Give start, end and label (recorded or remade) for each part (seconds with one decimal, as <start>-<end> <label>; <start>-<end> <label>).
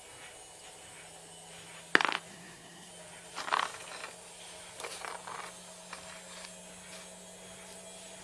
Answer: 0.0-2.3 recorded; 2.3-2.9 remade; 2.9-8.2 recorded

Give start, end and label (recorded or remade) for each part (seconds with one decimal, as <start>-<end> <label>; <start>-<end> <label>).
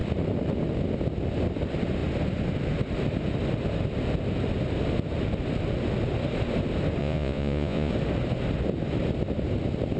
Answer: 0.0-7.0 recorded; 7.0-7.9 remade; 7.9-10.0 recorded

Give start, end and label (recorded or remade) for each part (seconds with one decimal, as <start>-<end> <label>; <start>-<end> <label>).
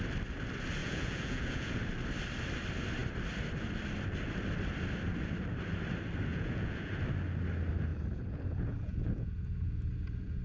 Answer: 0.0-0.8 recorded; 0.8-1.8 remade; 1.8-6.3 recorded; 6.3-7.0 remade; 7.0-7.9 recorded; 7.9-10.4 remade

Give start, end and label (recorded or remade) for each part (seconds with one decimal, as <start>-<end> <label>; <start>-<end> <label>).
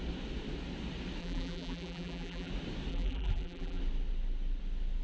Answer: 0.0-1.2 recorded; 1.2-2.5 remade; 2.5-2.9 recorded; 2.9-3.8 remade; 3.8-5.0 recorded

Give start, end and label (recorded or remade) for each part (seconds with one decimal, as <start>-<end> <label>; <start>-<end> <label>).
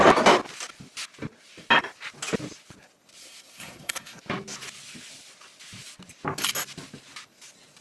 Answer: 0.0-3.2 recorded; 3.2-4.2 remade; 4.2-7.8 recorded